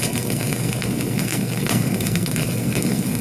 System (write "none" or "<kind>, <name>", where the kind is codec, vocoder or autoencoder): codec, SNAC